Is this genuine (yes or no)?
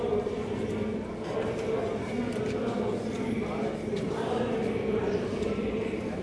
yes